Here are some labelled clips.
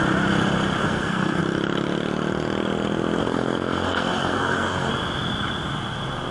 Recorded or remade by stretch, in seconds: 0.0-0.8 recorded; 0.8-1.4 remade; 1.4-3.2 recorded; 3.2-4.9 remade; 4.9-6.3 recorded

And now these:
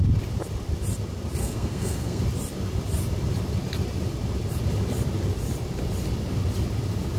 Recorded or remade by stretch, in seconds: 0.0-1.4 recorded; 1.4-2.2 remade; 2.2-7.2 recorded

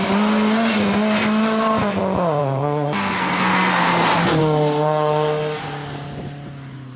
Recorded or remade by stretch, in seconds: 0.0-2.4 recorded; 2.4-3.9 remade; 3.9-4.4 recorded; 4.4-5.6 remade; 5.6-7.0 recorded